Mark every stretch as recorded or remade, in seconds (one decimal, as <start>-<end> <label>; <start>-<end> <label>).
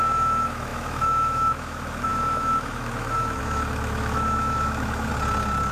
0.0-5.1 remade; 5.1-5.7 recorded